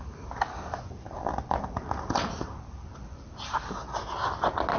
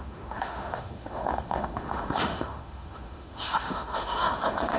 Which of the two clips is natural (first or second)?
first